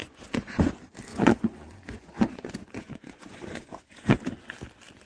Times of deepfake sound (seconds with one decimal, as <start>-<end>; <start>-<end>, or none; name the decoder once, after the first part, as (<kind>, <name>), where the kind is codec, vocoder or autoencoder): 0.0-0.7 (vocoder, Vocos); 1.1-4.2